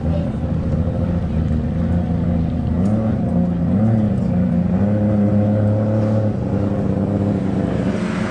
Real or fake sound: real